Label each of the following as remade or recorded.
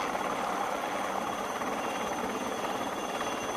recorded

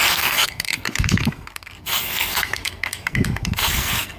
remade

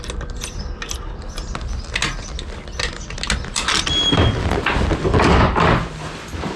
recorded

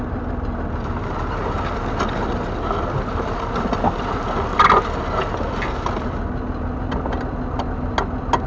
recorded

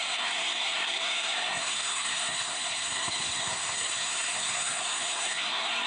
remade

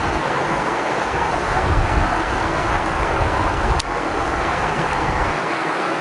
remade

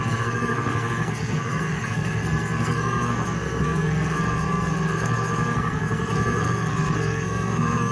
remade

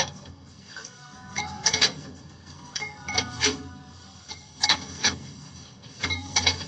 remade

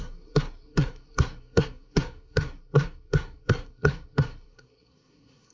remade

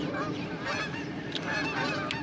recorded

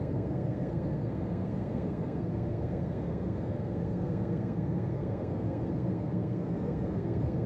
remade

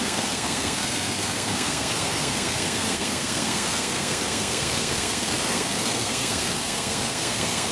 remade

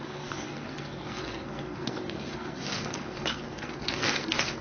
remade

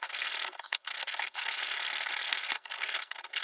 remade